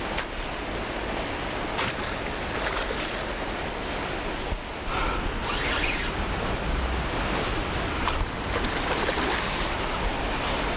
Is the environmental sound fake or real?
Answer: real